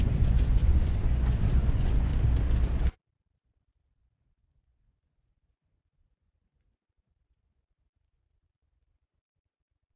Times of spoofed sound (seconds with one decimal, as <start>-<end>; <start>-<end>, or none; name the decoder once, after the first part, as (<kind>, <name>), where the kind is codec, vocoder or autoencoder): 0.0-2.1 (vocoder, Vocos); 4.3-10.0